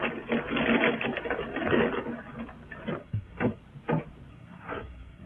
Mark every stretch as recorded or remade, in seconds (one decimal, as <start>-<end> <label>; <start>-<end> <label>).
0.0-3.0 recorded; 3.0-3.6 remade; 3.6-4.3 recorded; 4.3-5.3 remade